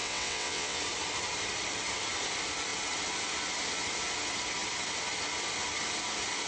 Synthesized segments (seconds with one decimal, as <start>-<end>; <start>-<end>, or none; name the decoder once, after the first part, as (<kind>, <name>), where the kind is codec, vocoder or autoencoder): 0.0-0.8 (vocoder, WaveNeXt)